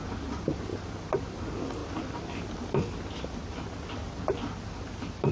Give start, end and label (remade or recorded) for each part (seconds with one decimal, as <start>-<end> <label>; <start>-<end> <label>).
0.0-5.3 recorded